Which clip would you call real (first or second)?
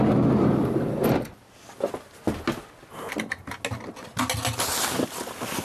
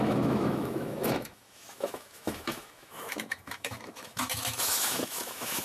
first